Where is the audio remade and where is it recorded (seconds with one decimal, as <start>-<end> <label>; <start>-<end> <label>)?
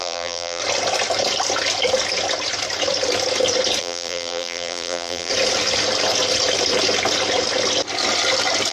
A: 0.0-0.6 remade; 0.6-3.8 recorded; 3.8-5.3 remade; 5.3-8.7 recorded